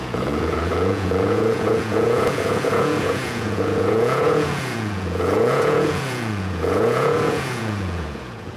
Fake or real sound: fake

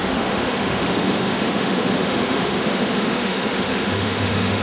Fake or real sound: fake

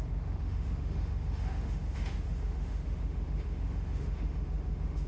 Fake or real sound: fake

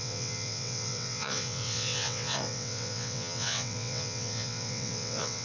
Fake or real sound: fake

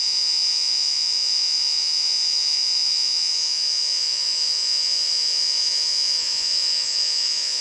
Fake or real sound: fake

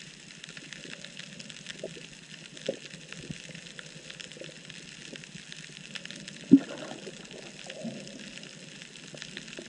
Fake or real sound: real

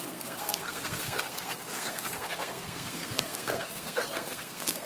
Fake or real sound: fake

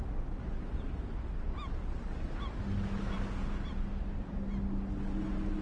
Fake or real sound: real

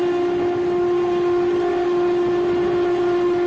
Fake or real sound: real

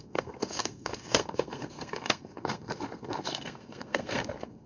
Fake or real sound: fake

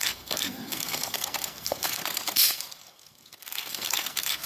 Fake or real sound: fake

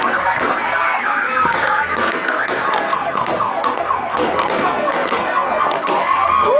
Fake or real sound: fake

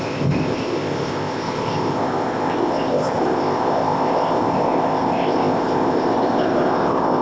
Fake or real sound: fake